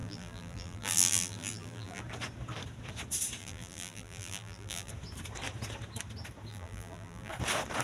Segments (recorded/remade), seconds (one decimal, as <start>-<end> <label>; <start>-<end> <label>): 0.0-2.0 remade; 2.0-3.4 recorded; 3.4-4.9 remade; 4.9-6.5 recorded; 6.5-7.3 remade; 7.3-7.8 recorded